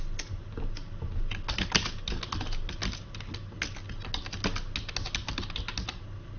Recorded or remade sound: recorded